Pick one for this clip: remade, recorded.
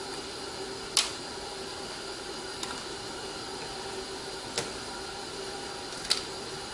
recorded